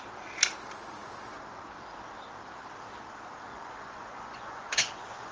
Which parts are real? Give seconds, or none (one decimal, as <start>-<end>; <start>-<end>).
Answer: 0.0-3.5